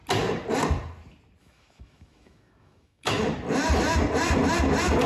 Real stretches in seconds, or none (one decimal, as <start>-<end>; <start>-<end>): 0.0-1.4; 3.2-5.1

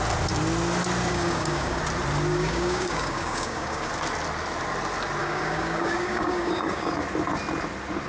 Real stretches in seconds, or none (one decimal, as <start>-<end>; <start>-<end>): 0.0-1.1; 1.8-2.3; 3.9-5.2; 6.9-8.1

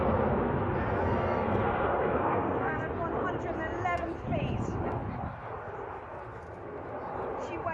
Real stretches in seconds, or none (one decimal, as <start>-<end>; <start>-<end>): 0.0-1.0; 2.8-7.7

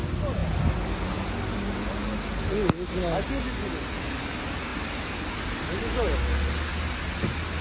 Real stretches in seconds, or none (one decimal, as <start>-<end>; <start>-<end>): 0.0-7.6

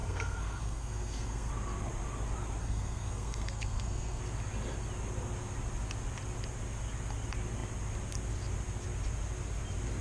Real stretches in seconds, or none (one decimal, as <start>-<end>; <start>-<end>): 1.5-2.6; 4.2-10.0

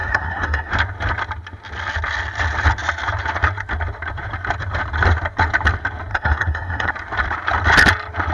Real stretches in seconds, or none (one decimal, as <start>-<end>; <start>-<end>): 0.7-6.1; 6.9-8.3

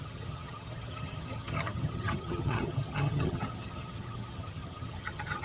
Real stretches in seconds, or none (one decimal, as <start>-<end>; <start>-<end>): none